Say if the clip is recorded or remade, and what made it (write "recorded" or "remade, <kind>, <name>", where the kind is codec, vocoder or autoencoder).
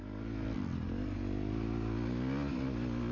recorded